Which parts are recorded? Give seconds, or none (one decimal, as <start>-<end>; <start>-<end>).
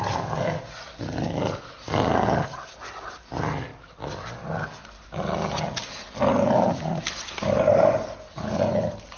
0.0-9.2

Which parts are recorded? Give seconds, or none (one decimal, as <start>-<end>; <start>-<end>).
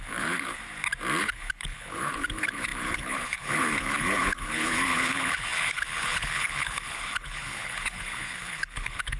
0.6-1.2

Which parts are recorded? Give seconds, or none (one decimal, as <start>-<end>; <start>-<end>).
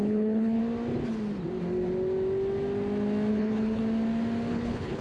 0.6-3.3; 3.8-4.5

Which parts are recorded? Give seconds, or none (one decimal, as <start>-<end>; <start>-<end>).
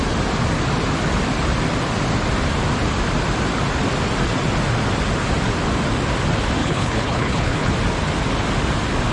0.0-6.6; 7.7-9.1